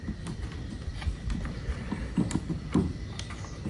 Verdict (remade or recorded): recorded